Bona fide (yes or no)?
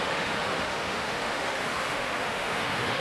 no